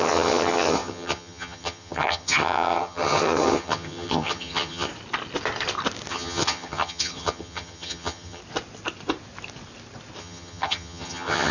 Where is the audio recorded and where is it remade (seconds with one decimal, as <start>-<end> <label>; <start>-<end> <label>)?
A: 0.0-4.9 remade; 4.9-6.1 recorded; 6.1-8.4 remade; 8.4-10.2 recorded; 10.2-11.5 remade